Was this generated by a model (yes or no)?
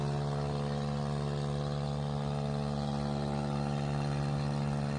no